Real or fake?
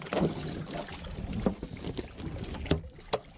real